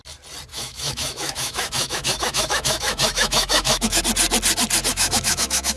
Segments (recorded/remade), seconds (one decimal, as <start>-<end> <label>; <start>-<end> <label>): 0.0-0.5 recorded; 0.5-4.0 remade; 4.0-4.9 recorded; 4.9-5.8 remade